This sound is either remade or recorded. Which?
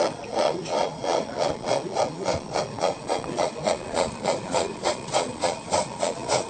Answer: remade